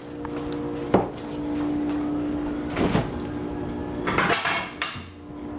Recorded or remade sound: recorded